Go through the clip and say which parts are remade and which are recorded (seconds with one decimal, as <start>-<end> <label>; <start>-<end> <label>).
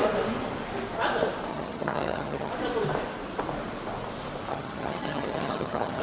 0.0-1.5 recorded; 1.5-2.5 remade; 2.5-4.5 recorded; 4.5-6.0 remade